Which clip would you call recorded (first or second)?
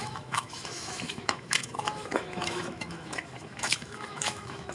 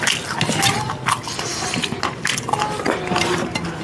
second